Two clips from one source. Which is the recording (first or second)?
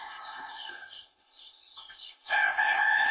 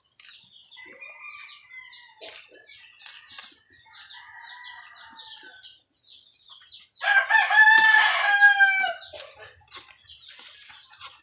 second